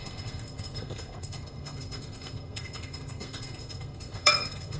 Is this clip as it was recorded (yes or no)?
no